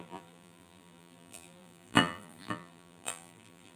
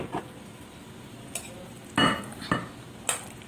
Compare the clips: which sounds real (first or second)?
second